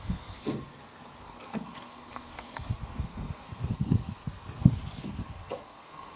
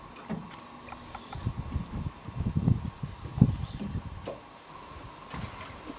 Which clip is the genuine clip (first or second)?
second